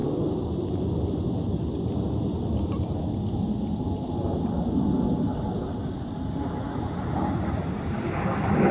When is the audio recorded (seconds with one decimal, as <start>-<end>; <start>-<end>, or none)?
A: 0.0-8.7